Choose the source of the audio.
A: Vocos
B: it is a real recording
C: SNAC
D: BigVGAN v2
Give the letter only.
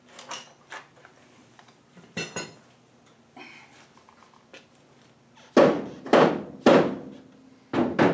B